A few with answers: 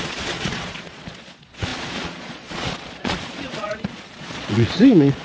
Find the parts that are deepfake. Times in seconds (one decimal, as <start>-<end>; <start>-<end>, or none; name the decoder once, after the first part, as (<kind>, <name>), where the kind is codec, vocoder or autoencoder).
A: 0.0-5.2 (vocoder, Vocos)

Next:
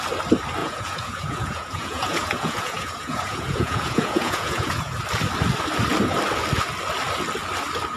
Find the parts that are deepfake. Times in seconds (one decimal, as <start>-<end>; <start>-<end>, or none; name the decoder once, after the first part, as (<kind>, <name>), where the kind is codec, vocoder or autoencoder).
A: 0.6-5.0 (vocoder, Vocos)

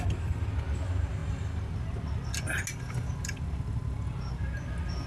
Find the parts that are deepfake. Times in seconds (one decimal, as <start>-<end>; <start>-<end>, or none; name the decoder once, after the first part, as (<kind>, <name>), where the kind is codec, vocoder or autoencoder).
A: none

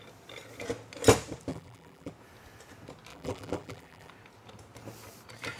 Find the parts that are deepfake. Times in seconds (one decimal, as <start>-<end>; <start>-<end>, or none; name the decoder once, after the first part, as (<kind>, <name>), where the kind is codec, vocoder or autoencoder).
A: 1.5-2.1 (vocoder, BigVGAN v2); 3.1-4.1

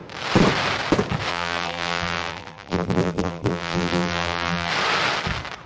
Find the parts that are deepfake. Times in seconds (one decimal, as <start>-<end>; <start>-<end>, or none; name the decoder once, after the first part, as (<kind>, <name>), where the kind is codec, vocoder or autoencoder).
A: 1.3-4.7 (vocoder, BigVGAN v2)